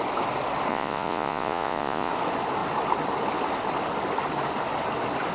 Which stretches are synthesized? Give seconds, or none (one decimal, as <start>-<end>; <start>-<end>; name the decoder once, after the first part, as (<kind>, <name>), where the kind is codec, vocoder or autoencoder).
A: 0.7-2.1 (vocoder, Vocos)